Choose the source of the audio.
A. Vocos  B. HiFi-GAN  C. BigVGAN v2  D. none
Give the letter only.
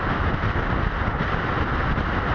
D